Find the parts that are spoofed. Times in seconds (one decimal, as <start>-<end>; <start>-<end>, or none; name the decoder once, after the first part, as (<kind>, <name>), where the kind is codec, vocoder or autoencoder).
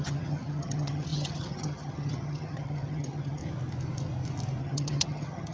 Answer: 0.0-3.4 (vocoder, HiFi-GAN); 4.6-5.5